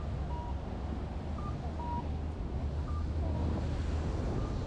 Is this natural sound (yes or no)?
yes